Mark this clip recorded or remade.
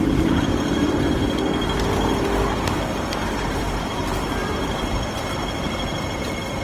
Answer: recorded